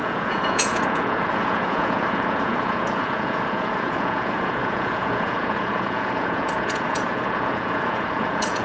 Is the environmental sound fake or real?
fake